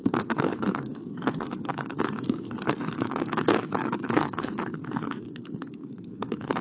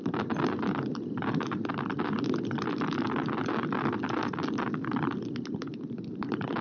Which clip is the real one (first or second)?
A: second